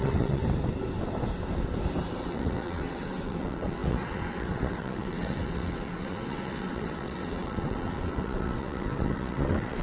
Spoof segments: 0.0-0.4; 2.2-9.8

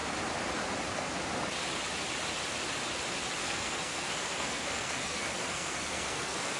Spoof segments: 3.4-6.6

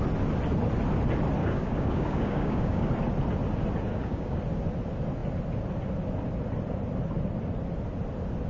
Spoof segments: 1.4-2.9; 3.9-4.4

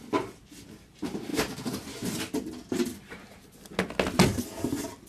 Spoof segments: none

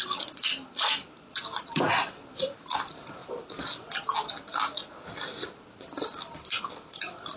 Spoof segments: none

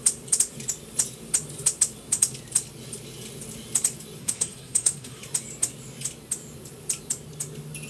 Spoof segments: 4.2-5.2

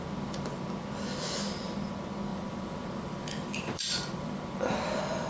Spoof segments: 2.3-5.3